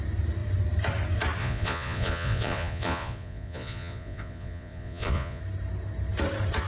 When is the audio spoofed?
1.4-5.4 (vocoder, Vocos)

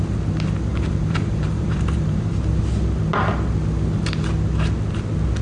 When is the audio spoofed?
0.7-2.6 (vocoder, BigVGAN v2)

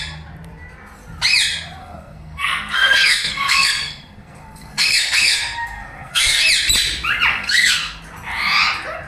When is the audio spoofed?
1.8-6.4 (codec, SNAC); 7.3-8.0

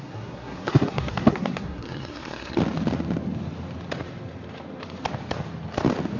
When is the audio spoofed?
0.0-2.6 (codec, SNAC)